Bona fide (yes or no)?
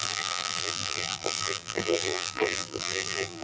no